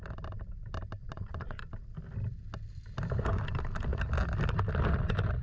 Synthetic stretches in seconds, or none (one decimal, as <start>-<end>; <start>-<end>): 1.0-1.6